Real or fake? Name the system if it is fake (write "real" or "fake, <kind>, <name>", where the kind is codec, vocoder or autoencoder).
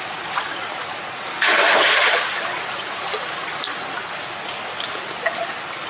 real